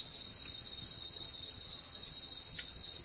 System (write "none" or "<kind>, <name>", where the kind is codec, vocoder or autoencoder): vocoder, HiFi-GAN